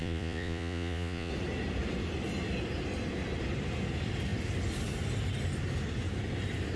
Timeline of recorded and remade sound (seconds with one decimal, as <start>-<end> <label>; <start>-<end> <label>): 0.0-1.3 remade; 1.3-6.8 recorded